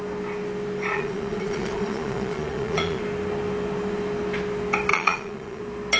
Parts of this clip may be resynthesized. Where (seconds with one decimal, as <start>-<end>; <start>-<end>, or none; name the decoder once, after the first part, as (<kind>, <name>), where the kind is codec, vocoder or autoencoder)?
0.9-3.0 (vocoder, Vocos); 4.9-5.6